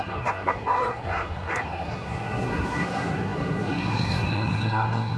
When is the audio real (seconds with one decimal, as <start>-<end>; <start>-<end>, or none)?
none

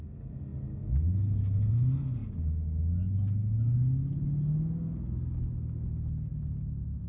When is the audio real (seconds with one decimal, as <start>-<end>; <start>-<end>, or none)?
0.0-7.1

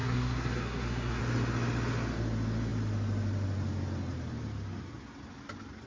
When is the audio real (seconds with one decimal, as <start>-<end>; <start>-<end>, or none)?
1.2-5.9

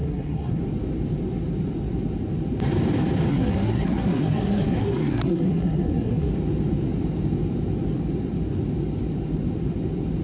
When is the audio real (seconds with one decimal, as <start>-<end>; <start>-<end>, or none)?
0.6-3.3; 6.3-10.2

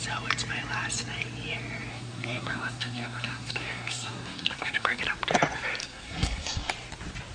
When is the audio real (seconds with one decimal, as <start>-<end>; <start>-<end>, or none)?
0.0-1.9; 5.0-5.8; 6.7-7.3